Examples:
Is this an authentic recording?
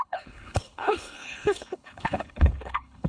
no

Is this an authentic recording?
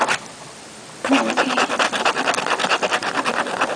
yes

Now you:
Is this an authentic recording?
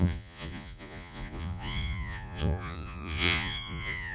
no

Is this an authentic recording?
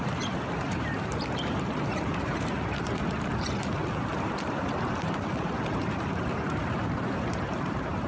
no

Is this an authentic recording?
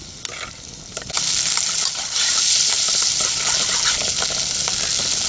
yes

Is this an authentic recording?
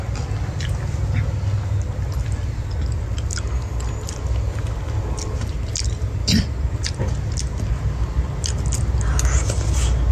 yes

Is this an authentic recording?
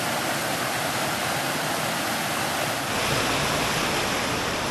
yes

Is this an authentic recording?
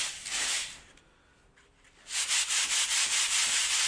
yes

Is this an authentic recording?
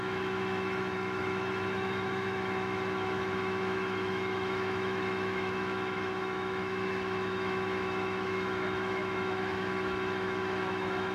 no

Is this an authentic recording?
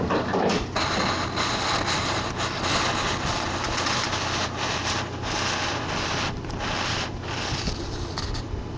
yes